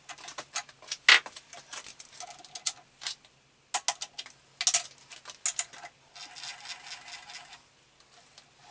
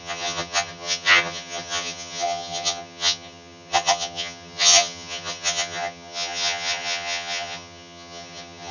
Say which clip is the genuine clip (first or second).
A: first